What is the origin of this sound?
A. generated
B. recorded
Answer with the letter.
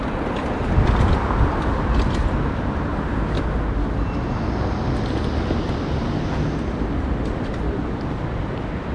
B